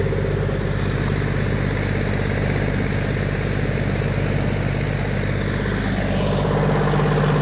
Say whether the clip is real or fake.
real